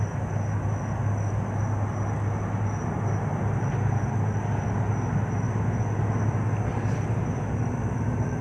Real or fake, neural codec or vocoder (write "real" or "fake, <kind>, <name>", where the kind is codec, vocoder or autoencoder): real